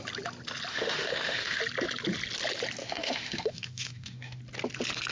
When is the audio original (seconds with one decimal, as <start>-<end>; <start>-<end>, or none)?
0.0-0.7; 1.6-2.8; 4.4-5.1